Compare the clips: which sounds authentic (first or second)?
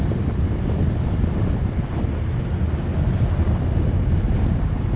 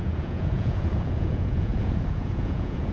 first